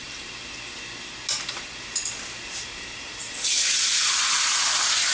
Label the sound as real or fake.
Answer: real